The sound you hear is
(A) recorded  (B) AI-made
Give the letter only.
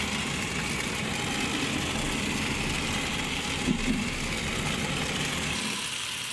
A